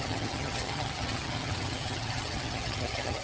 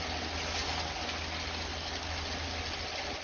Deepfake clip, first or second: first